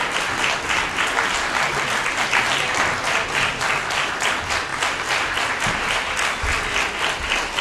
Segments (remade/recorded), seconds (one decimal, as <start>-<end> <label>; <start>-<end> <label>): 0.0-7.6 recorded